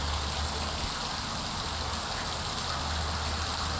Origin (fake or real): real